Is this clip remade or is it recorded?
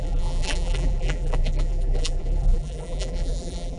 remade